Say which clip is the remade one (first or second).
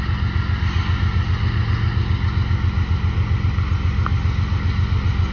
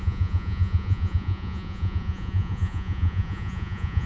second